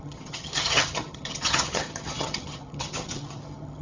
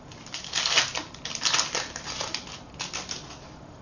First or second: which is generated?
first